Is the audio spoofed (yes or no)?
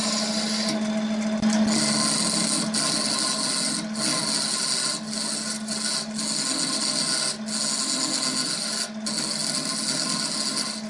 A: no